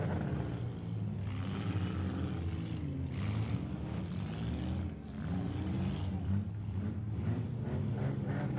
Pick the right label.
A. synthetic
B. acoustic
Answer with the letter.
B